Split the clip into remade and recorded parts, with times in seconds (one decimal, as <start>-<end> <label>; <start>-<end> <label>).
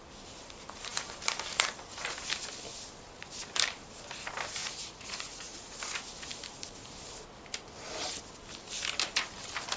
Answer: 0.0-4.6 recorded; 4.6-5.7 remade; 5.7-9.8 recorded